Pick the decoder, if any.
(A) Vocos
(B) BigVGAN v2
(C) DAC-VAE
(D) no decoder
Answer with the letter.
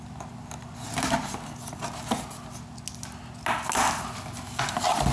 D